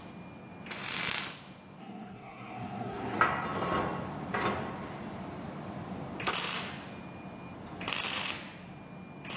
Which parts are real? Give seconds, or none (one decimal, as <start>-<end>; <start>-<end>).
0.0-1.8; 3.2-9.4